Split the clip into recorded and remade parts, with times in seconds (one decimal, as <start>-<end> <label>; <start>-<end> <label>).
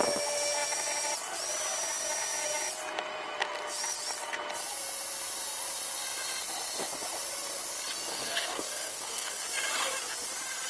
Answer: 0.0-8.1 recorded; 8.1-9.4 remade; 9.4-10.7 recorded